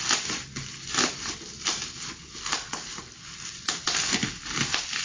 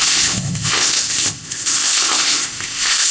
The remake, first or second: second